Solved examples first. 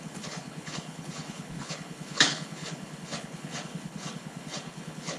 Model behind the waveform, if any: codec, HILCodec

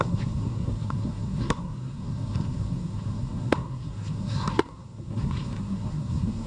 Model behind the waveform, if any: codec, SNAC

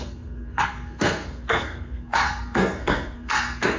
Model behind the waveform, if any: codec, SNAC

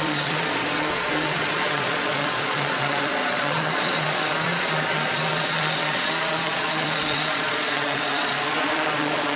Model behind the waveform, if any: vocoder, Vocos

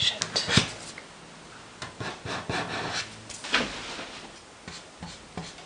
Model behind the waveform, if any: none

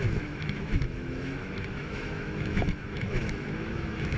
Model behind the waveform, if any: autoencoder, DAC-VAE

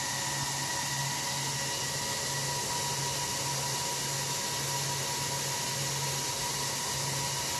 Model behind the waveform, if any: none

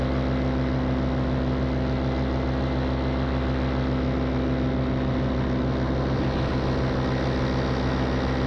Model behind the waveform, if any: none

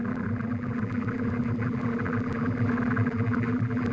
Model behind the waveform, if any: vocoder, BigVGAN v2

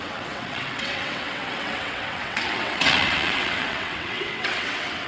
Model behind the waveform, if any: vocoder, WaveNeXt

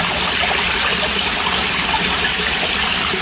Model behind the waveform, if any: none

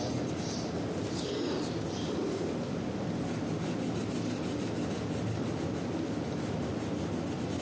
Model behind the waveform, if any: none